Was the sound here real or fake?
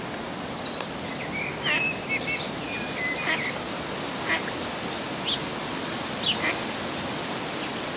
real